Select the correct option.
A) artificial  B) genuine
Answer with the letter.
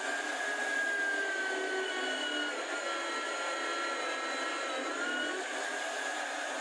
B